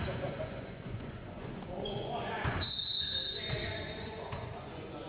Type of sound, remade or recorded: remade